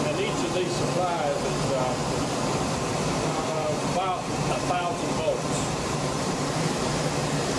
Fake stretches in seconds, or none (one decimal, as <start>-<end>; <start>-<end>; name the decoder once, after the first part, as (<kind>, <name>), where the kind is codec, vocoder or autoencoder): 2.0-6.6 (vocoder, BigVGAN v2)